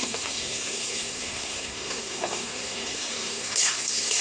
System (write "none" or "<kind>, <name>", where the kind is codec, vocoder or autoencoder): codec, SNAC